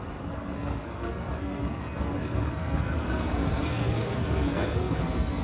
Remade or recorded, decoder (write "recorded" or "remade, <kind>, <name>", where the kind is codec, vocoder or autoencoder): remade, codec, SNAC